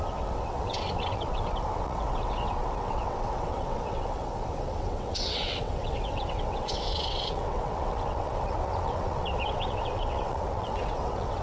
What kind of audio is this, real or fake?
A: fake